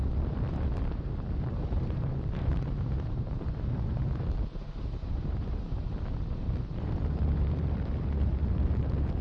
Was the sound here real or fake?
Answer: fake